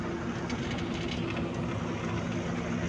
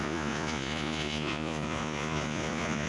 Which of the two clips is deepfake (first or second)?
second